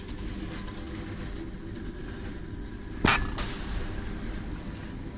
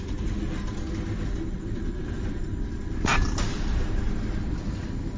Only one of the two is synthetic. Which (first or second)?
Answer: second